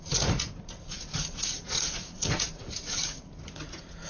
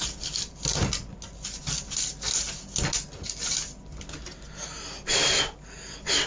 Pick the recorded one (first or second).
second